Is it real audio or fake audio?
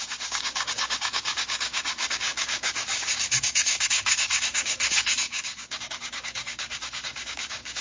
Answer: fake